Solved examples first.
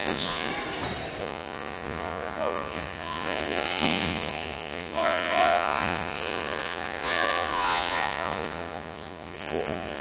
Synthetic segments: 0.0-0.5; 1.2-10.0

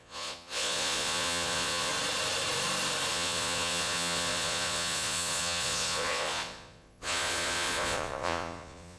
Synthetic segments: 0.0-1.9; 3.1-9.0

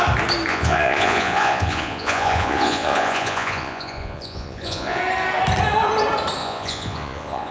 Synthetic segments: 0.5-5.0; 6.4-7.5

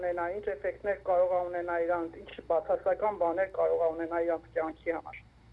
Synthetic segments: none

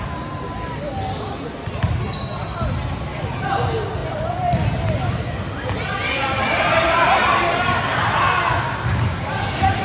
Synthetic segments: none